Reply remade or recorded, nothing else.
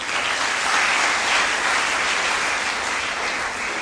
recorded